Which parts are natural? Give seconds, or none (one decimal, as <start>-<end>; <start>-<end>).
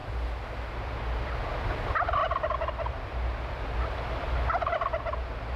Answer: 0.0-5.6